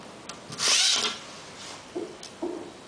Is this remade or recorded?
recorded